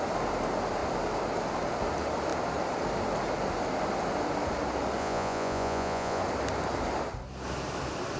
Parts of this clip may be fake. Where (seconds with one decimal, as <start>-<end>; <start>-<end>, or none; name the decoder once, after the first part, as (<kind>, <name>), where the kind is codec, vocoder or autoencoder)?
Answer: 5.0-6.2 (vocoder, Vocos)